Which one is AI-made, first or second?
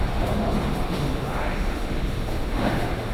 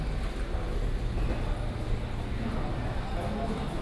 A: first